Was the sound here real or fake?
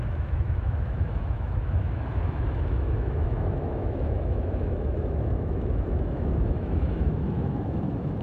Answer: fake